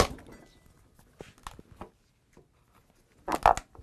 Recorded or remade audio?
recorded